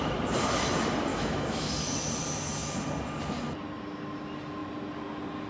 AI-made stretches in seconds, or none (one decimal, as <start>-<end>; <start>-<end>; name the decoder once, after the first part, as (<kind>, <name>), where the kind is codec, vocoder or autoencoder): 1.1-1.7 (autoencoder, DAC-VAE)